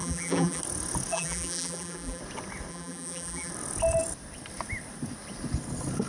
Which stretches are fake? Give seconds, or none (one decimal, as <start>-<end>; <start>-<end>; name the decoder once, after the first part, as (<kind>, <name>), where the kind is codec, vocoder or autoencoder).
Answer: 0.0-0.6 (vocoder, BigVGAN v2); 1.1-2.2; 2.7-3.5